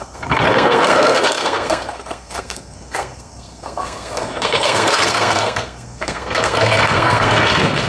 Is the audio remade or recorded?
remade